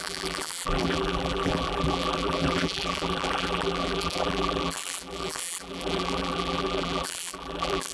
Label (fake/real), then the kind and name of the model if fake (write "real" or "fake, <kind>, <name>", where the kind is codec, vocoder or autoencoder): fake, vocoder, BigVGAN v2